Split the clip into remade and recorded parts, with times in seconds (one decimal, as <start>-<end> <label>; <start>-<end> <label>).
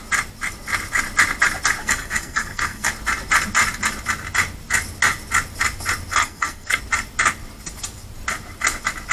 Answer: 0.0-1.8 recorded; 1.8-2.9 remade; 2.9-6.2 recorded; 6.2-6.8 remade; 6.8-9.1 recorded